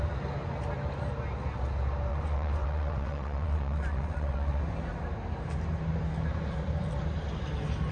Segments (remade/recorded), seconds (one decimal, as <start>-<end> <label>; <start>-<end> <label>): 0.0-2.1 recorded; 2.1-4.6 remade; 4.6-7.9 recorded